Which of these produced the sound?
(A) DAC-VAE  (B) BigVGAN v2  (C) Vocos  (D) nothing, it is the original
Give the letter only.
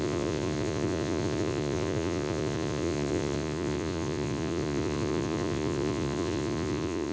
C